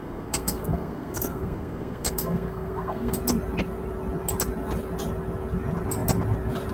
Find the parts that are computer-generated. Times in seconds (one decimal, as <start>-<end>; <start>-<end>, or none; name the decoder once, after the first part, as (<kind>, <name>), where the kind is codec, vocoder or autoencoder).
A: 0.0-3.2 (codec, SNAC)